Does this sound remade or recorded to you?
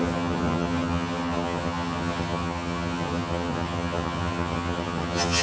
remade